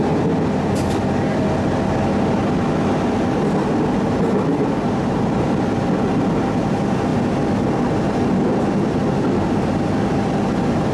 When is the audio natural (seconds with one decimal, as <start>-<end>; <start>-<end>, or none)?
0.0-10.9